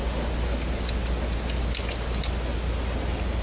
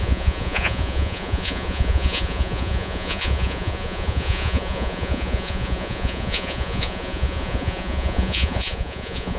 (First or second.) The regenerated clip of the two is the second